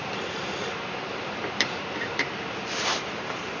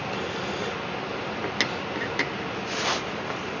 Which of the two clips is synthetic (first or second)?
first